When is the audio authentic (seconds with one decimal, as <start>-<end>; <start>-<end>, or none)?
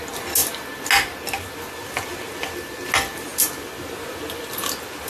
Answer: 0.0-5.1